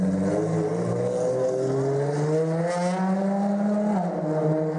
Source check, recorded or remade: recorded